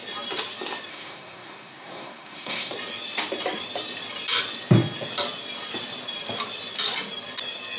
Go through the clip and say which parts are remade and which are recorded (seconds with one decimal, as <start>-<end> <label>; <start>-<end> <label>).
0.0-0.9 recorded; 0.9-2.7 remade; 2.7-7.8 recorded

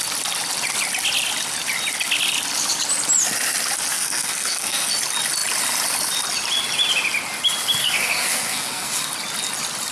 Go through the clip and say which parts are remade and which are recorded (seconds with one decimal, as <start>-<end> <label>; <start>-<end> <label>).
0.0-3.9 recorded; 3.9-4.9 remade; 4.9-7.8 recorded; 7.8-9.0 remade; 9.0-9.9 recorded

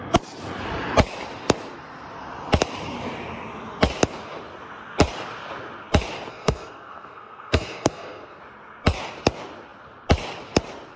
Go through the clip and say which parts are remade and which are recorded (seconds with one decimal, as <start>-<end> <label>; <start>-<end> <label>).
0.0-6.3 recorded; 6.3-8.4 remade; 8.4-11.0 recorded

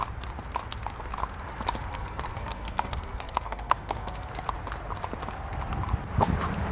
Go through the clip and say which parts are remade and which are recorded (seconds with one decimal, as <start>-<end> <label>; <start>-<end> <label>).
0.0-1.9 recorded; 1.9-4.3 remade; 4.3-6.7 recorded

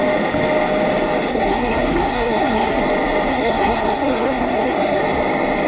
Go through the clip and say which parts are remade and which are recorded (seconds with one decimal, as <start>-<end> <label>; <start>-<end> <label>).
0.0-1.3 recorded; 1.3-2.8 remade; 2.8-3.3 recorded; 3.3-5.0 remade; 5.0-5.7 recorded

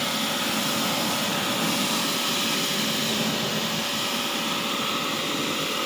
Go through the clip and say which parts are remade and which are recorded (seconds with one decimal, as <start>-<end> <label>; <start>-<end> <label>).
0.0-5.9 recorded

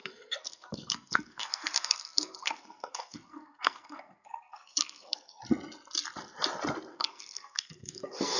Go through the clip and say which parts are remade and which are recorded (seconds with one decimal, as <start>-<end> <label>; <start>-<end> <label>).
0.0-5.4 remade; 5.4-6.9 recorded; 6.9-8.4 remade